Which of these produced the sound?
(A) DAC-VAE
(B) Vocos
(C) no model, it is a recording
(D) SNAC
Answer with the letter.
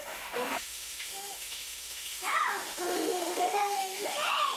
A